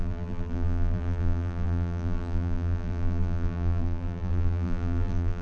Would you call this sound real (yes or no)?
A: no